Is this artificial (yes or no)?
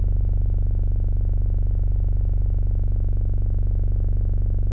no